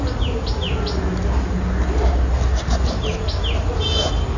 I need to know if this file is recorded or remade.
recorded